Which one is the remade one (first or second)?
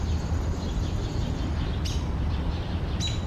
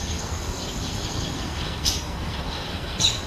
second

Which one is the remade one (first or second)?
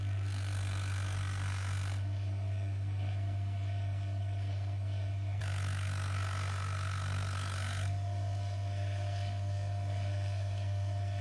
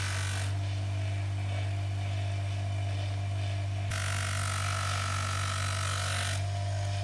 first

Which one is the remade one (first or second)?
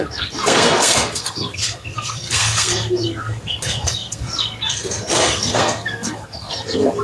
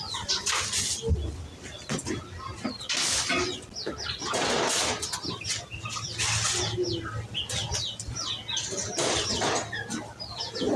first